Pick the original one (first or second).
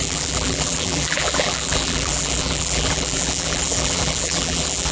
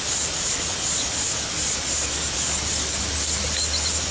second